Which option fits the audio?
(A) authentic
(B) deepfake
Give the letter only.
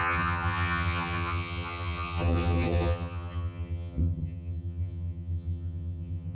B